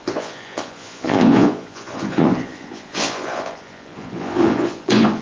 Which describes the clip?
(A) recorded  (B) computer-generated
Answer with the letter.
B